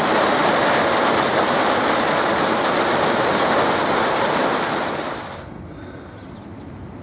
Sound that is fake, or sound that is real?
real